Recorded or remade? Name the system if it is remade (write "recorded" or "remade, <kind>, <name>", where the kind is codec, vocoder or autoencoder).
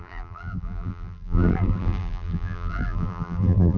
remade, vocoder, BigVGAN v2